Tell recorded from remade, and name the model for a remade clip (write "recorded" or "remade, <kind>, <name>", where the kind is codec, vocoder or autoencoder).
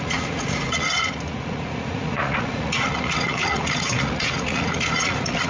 remade, vocoder, Vocos